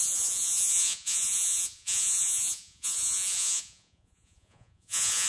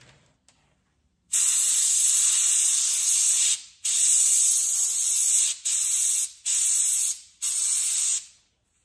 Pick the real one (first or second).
second